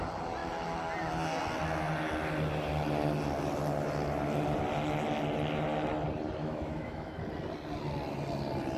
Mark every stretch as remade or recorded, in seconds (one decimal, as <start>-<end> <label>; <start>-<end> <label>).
0.0-6.4 recorded; 6.4-7.2 remade; 7.2-8.8 recorded